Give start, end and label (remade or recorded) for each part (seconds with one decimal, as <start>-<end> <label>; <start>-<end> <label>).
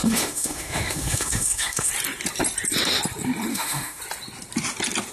0.0-1.9 remade; 1.9-3.5 recorded; 3.5-4.0 remade; 4.0-5.1 recorded